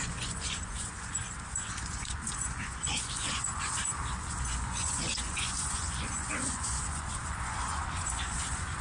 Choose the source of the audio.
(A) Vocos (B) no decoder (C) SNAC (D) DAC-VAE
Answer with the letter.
A